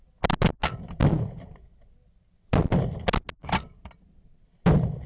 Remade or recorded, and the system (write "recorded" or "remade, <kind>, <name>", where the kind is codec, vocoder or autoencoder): recorded